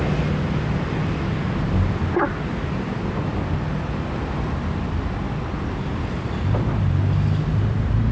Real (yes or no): yes